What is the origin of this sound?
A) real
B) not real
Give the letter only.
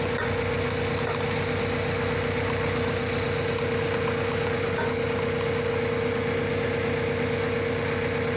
A